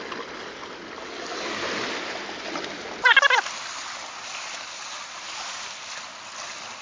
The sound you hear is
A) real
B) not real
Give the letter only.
A